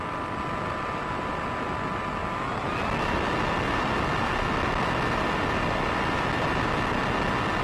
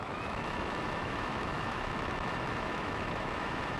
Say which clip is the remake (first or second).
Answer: second